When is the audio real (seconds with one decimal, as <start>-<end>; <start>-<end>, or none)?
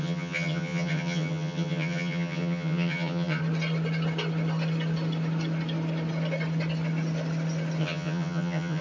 3.4-7.8